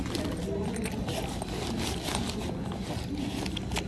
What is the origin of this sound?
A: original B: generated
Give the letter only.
A